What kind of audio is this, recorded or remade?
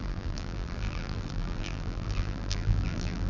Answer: remade